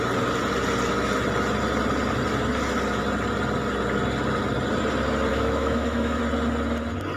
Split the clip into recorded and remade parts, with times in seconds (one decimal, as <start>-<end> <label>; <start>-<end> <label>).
0.0-5.3 recorded; 5.3-6.2 remade; 6.2-7.2 recorded

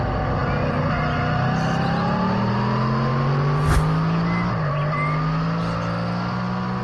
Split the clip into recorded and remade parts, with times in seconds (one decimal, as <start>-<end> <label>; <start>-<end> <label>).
0.0-6.8 recorded

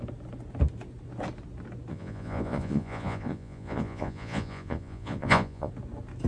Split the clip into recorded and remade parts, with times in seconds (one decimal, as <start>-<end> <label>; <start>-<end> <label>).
0.0-1.9 recorded; 1.9-5.7 remade; 5.7-6.3 recorded

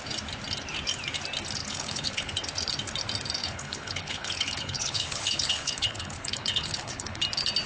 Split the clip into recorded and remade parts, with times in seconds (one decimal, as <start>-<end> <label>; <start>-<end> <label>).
0.0-1.6 recorded; 1.6-2.3 remade; 2.3-3.4 recorded; 3.4-7.2 remade; 7.2-7.7 recorded

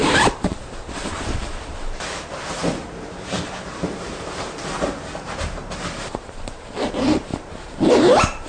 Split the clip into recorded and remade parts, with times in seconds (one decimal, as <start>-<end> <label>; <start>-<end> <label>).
0.0-7.3 remade; 7.3-7.9 recorded; 7.9-8.5 remade

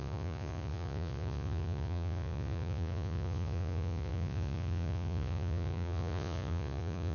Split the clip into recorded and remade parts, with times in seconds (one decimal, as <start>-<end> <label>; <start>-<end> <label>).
0.0-7.1 remade

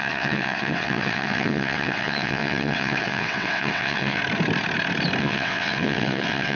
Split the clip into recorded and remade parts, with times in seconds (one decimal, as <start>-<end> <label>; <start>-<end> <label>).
0.0-4.2 remade; 4.2-5.2 recorded; 5.2-6.6 remade

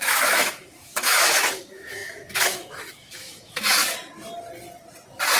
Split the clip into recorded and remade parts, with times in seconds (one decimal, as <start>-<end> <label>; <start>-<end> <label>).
0.0-3.8 remade; 3.8-5.4 recorded